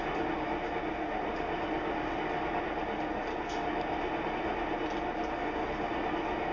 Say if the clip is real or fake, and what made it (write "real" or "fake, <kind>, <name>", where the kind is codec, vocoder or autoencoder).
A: real